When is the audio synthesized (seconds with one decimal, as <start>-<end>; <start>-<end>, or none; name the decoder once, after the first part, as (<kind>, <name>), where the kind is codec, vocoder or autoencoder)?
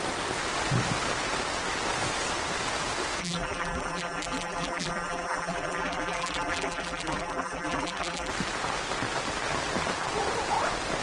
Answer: 3.2-8.3 (vocoder, BigVGAN v2)